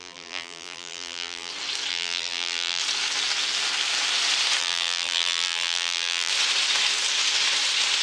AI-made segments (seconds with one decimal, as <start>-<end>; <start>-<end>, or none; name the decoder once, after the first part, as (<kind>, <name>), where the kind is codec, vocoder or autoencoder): 0.0-1.5 (vocoder, BigVGAN v2); 1.9-2.8; 4.6-6.3